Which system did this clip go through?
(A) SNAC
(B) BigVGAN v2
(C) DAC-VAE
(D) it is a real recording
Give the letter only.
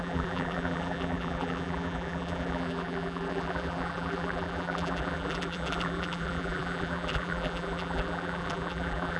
B